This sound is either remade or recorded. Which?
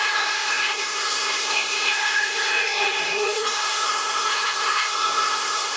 remade